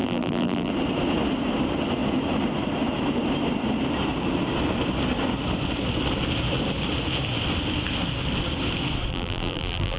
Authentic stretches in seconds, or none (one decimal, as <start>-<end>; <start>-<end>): 0.7-9.1

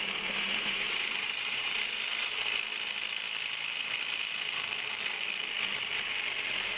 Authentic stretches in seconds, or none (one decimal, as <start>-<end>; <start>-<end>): 1.8-6.8

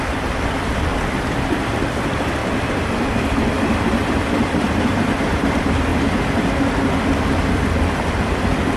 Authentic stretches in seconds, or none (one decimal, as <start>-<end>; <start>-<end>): 5.9-7.5

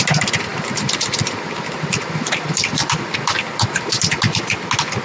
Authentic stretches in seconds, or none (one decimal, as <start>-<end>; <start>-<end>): 2.8-5.0

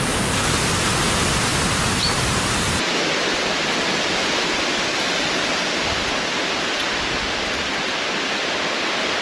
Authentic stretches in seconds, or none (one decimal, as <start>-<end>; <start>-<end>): 0.0-9.2

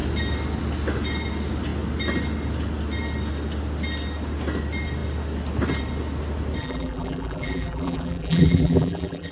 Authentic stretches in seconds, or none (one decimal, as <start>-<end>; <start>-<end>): 0.0-6.6

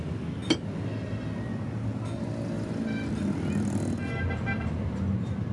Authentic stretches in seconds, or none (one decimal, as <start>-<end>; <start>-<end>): 0.0-5.5

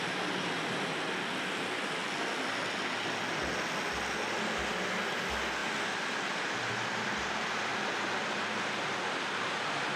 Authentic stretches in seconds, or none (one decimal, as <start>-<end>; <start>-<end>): 0.0-7.7; 8.2-10.0